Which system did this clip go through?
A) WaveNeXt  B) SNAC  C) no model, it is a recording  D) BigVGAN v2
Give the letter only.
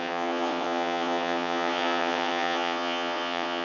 A